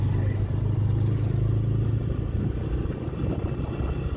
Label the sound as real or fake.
real